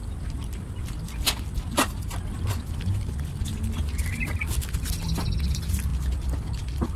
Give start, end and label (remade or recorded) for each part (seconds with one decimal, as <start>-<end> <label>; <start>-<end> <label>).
0.0-7.0 recorded